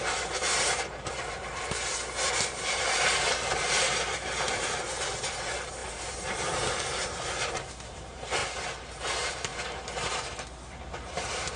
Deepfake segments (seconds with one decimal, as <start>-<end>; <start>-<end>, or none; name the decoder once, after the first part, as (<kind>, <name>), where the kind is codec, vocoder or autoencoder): 0.0-8.4 (vocoder, BigVGAN v2); 8.9-9.5; 10.9-11.6